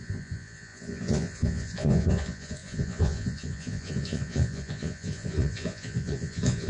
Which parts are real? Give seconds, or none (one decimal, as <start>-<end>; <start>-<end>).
none